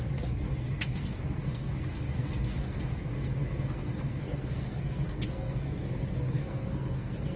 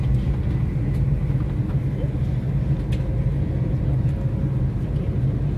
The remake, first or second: first